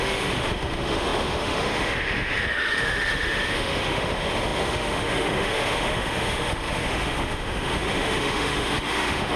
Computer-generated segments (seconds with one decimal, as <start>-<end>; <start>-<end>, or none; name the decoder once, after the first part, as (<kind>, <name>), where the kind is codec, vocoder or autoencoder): 0.0-9.4 (autoencoder, DAC-VAE)